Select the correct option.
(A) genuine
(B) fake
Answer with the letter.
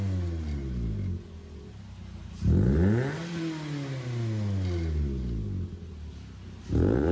A